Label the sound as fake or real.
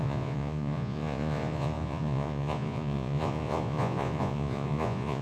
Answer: fake